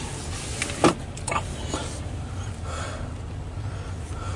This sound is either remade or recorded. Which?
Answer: recorded